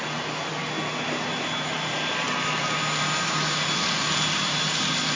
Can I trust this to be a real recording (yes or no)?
yes